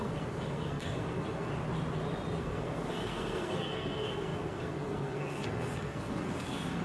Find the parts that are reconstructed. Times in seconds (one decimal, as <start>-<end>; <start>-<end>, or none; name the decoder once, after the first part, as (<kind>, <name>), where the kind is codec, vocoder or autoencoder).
0.0-1.5 (codec, SNAC); 2.4-6.8